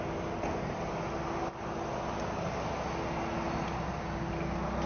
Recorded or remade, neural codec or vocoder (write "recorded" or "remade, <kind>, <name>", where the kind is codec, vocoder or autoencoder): recorded